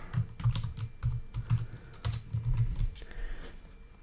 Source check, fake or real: real